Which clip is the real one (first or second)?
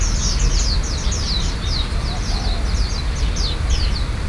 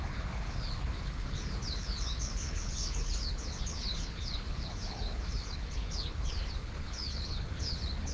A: first